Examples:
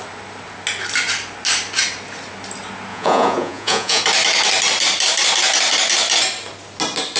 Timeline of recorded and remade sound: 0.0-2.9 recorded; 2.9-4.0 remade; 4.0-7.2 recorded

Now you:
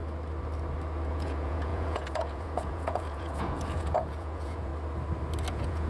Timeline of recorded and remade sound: 0.0-1.1 recorded; 1.1-4.7 remade; 4.7-5.5 recorded; 5.5-5.9 remade

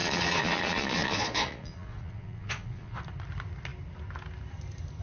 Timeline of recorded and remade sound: 0.0-3.0 remade; 3.0-5.0 recorded

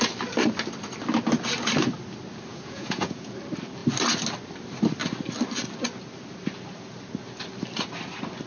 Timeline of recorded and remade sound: 0.0-2.5 recorded; 2.5-3.3 remade; 3.3-8.5 recorded